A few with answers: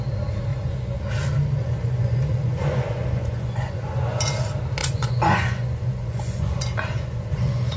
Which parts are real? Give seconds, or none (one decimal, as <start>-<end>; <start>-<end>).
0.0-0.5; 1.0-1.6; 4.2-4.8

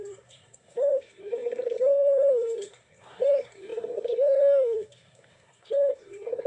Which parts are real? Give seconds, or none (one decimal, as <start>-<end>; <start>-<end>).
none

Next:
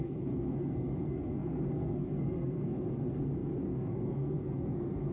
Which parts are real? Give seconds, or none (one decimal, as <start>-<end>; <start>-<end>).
none

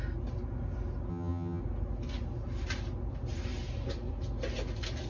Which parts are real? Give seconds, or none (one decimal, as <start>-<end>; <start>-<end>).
0.0-1.1; 1.6-5.1

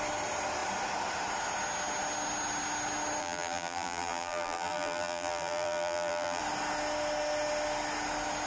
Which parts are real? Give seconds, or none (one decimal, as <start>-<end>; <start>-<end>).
0.0-3.2; 6.4-8.5

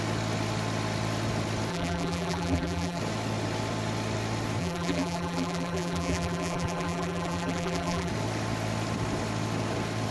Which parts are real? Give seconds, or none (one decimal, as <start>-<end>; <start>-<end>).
0.0-1.7; 3.0-4.6; 8.1-10.1